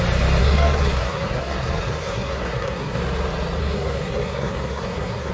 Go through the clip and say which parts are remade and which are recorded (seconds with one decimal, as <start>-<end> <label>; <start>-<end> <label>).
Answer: 0.0-0.4 recorded; 0.4-3.0 remade; 3.0-3.6 recorded; 3.6-5.3 remade